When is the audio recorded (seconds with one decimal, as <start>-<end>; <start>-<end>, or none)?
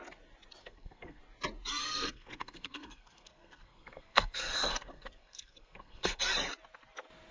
0.0-0.6; 1.2-1.8; 6.2-7.3